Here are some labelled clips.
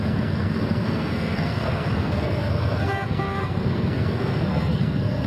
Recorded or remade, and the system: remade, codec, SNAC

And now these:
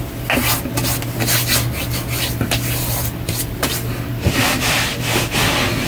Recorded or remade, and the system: recorded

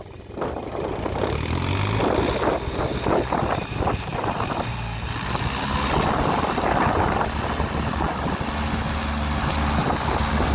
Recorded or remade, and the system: recorded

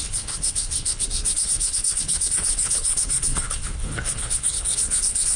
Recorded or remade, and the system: remade, codec, HILCodec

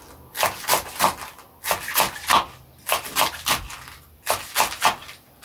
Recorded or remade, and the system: recorded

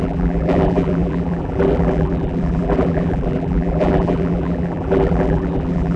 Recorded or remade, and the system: remade, vocoder, BigVGAN v2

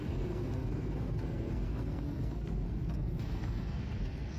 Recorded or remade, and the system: remade, codec, SNAC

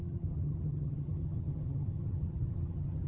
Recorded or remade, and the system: remade, vocoder, HiFi-GAN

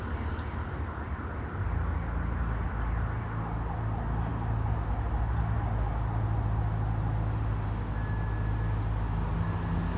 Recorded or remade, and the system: recorded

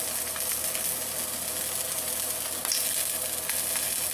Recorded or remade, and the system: recorded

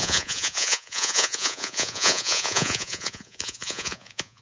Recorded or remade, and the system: remade, vocoder, Vocos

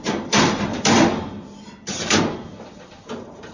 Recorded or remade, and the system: remade, vocoder, BigVGAN v2